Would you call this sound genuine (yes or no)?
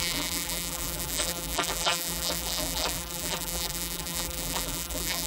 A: no